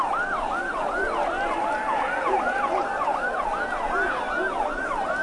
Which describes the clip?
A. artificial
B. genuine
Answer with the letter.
B